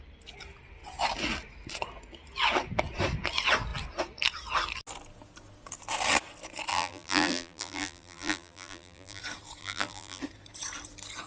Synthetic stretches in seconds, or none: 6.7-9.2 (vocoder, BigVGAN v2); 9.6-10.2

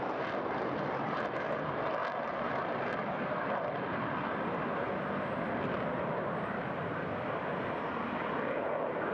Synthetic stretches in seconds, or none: 2.0-3.9 (vocoder, BigVGAN v2); 7.1-7.9